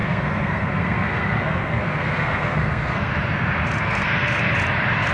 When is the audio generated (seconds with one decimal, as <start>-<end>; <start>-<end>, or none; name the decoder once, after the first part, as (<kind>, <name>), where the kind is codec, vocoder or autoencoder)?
0.0-3.1 (codec, SNAC); 3.8-4.5